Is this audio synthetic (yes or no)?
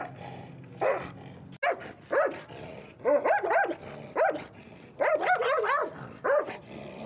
no